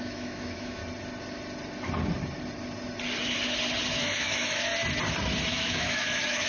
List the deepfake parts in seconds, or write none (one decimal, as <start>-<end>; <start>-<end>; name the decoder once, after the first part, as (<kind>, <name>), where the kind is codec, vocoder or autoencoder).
0.0-0.8 (autoencoder, DAC-VAE); 3.9-4.7; 5.5-6.5